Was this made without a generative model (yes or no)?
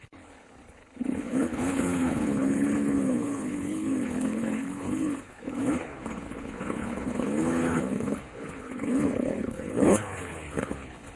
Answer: no